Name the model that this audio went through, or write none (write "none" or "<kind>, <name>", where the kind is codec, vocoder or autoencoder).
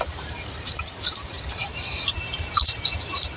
vocoder, BigVGAN v2